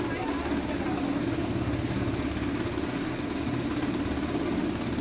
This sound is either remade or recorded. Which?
recorded